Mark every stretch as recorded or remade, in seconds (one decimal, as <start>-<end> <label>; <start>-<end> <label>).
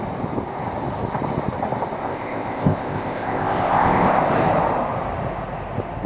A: 0.0-2.0 recorded; 2.0-4.2 remade; 4.2-6.1 recorded